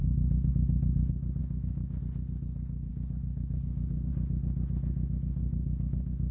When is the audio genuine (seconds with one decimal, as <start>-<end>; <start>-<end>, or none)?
0.5-1.4; 2.0-2.9; 4.1-5.4